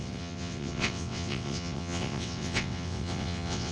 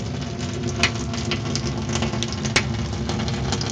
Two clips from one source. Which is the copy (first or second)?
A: first